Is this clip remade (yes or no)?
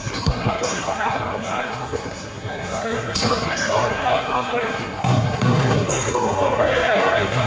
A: yes